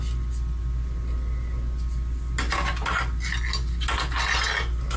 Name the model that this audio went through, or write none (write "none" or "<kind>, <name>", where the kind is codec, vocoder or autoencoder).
none